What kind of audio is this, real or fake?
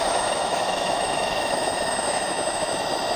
fake